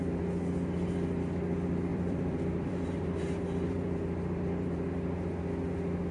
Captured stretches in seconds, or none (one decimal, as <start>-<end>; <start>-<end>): 0.0-1.9; 4.9-6.1

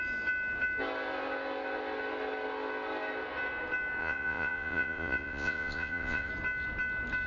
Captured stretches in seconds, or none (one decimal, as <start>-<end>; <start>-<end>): 0.0-4.0; 6.3-7.3